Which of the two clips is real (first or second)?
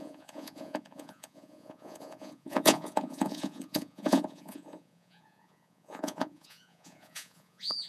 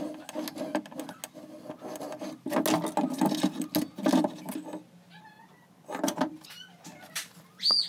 second